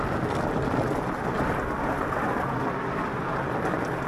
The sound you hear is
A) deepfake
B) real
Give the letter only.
B